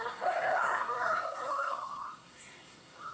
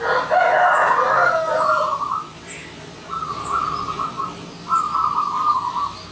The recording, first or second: second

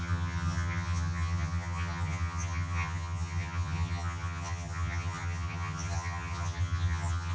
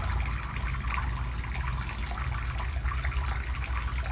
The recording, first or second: second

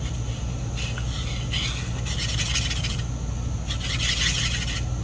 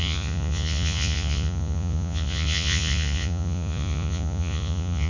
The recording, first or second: first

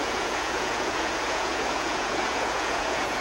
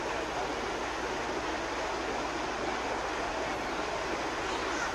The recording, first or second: second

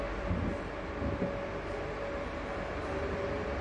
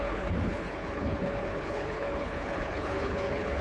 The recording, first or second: first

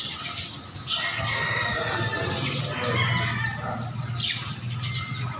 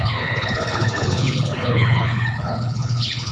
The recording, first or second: first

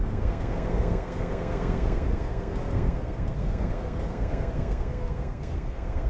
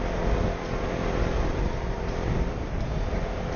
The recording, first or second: second